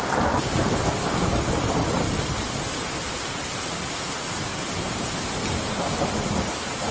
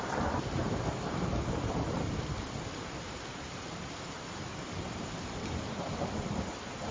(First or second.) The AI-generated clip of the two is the second